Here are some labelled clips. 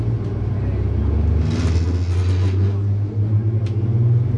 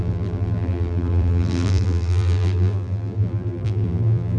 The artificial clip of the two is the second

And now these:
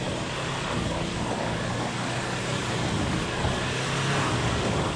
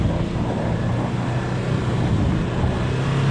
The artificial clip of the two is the first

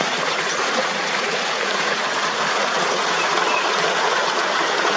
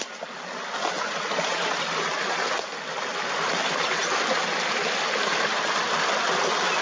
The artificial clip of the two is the first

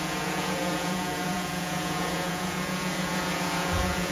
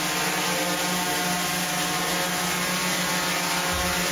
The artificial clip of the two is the first